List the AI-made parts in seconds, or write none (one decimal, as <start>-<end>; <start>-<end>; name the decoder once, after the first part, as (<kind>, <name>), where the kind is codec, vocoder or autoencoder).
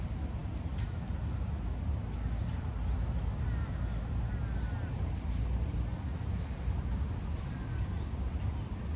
none